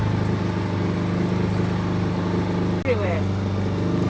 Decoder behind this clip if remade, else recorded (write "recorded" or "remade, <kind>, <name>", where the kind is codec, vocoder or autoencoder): recorded